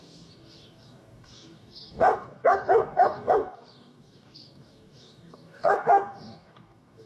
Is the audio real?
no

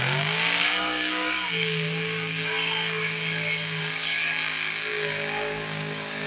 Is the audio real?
no